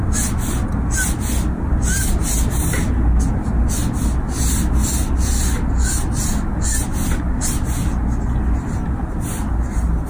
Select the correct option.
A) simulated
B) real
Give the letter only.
B